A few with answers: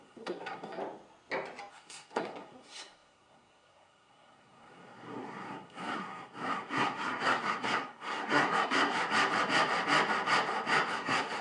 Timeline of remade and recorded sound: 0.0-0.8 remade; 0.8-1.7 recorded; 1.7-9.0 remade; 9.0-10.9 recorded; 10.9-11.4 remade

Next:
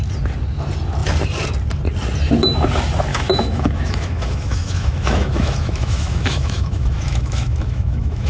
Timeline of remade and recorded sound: 0.0-3.1 recorded; 3.1-8.3 remade

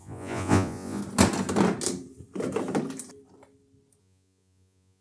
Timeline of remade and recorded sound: 0.0-1.0 remade; 1.0-4.0 recorded; 4.0-5.0 remade